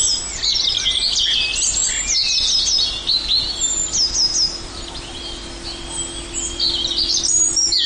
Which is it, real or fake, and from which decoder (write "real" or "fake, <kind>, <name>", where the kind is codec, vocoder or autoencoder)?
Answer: real